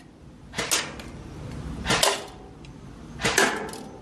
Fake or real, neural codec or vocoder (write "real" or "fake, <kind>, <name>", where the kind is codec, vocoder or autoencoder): real